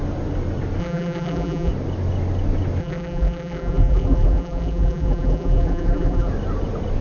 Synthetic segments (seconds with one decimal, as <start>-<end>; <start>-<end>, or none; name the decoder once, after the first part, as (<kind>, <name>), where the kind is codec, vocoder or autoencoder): 0.8-1.7 (vocoder, BigVGAN v2); 2.8-6.3